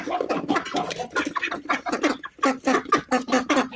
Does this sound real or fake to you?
real